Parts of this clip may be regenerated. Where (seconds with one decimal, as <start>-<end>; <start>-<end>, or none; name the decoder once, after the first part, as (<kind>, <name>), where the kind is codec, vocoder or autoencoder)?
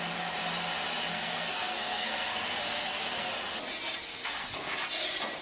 1.1-3.3 (codec, SNAC); 4.2-4.7